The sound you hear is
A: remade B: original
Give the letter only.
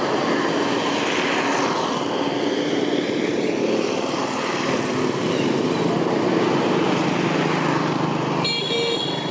B